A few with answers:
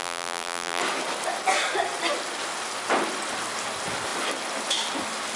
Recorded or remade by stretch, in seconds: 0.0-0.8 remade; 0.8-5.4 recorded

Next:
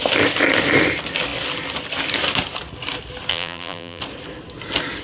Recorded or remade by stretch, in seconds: 0.0-3.3 recorded; 3.3-4.0 remade; 4.0-5.0 recorded